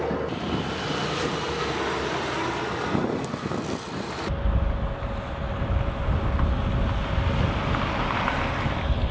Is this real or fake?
real